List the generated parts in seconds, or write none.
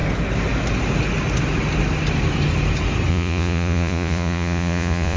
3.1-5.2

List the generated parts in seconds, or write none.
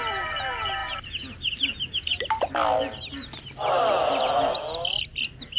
none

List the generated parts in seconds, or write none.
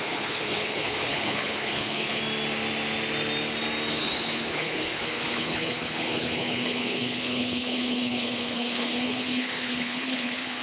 0.0-2.2; 3.9-10.6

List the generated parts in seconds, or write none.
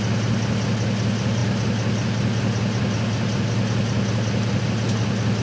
none